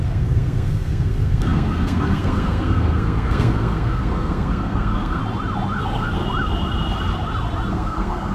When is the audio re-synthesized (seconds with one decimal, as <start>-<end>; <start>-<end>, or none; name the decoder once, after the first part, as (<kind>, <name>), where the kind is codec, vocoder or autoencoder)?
0.0-5.2 (codec, SNAC); 5.8-6.2; 7.7-8.3